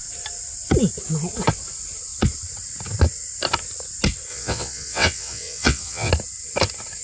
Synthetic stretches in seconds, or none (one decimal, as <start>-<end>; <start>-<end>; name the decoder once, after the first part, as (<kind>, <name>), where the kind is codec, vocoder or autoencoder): 4.3-6.1 (vocoder, WaveNeXt)